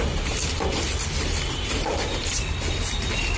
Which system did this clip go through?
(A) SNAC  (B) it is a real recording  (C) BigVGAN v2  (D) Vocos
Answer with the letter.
B